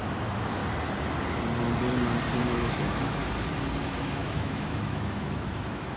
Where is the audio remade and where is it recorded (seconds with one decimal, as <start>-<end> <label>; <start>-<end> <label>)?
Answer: 0.0-0.6 remade; 0.6-2.4 recorded; 2.4-3.2 remade; 3.2-3.8 recorded; 3.8-6.0 remade